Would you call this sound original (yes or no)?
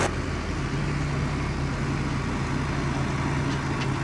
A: yes